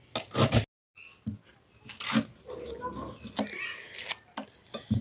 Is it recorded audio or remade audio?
recorded